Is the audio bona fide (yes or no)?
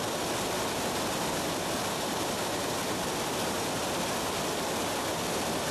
yes